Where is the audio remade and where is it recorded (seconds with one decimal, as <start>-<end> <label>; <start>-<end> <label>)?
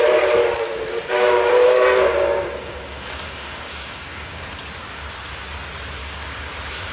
0.0-0.4 recorded; 0.4-4.5 remade; 4.5-6.0 recorded; 6.0-6.5 remade; 6.5-6.9 recorded